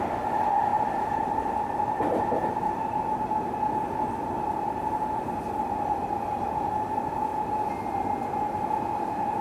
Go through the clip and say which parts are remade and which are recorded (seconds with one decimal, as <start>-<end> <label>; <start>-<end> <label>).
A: 0.0-7.3 remade; 7.3-8.8 recorded; 8.8-9.4 remade